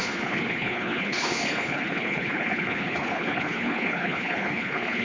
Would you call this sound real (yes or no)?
no